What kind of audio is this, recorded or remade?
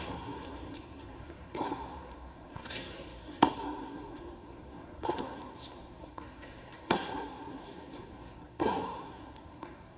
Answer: remade